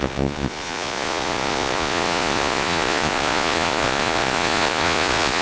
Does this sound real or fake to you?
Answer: fake